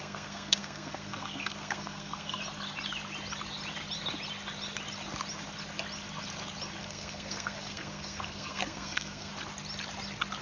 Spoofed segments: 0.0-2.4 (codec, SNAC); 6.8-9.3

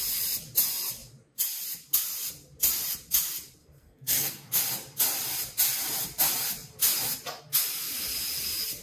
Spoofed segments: 3.6-4.6 (codec, SNAC)

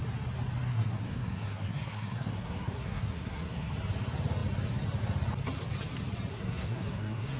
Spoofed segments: 0.7-3.7 (codec, SNAC); 6.3-7.4

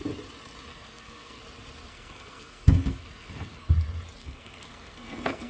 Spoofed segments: 0.7-1.4 (codec, SNAC); 1.9-3.7; 4.2-5.5

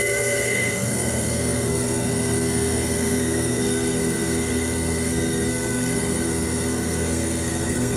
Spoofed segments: 0.0-8.0 (codec, SNAC)

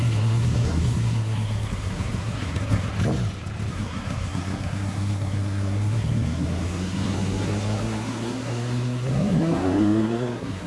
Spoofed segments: 0.0-2.9 (codec, SNAC); 3.7-10.7

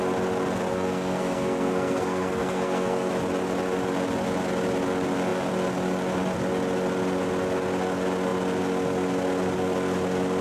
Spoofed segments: 0.7-3.1 (codec, SNAC)